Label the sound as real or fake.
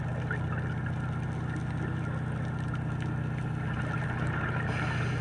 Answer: real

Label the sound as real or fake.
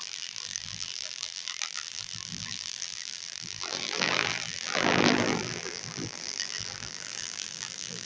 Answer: fake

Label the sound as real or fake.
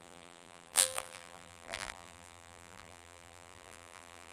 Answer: fake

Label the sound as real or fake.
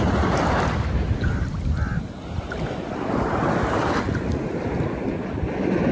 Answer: real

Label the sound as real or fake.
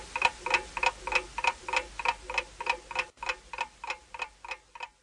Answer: real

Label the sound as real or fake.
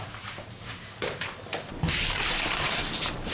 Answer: fake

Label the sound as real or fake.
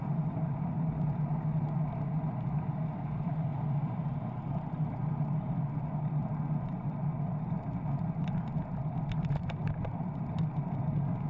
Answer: real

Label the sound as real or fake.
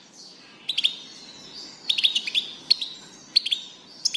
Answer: real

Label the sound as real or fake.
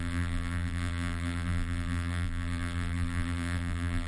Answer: fake